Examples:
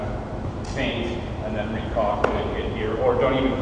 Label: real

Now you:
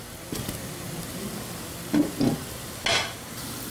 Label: real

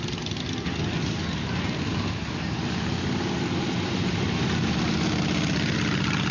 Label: real